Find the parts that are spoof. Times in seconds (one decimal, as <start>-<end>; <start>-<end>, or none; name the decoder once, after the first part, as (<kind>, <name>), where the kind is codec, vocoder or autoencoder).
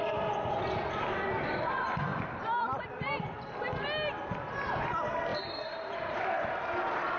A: 2.1-3.1 (vocoder, BigVGAN v2); 5.3-6.2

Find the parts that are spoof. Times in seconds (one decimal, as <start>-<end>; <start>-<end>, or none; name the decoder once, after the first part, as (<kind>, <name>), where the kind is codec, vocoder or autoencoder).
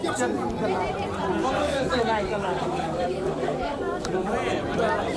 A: 1.6-4.3 (codec, DAC)